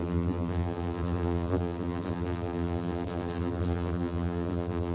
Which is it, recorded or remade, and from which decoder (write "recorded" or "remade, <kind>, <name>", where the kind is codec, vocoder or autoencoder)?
remade, vocoder, BigVGAN v2